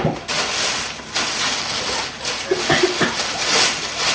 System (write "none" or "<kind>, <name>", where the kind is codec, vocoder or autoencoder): none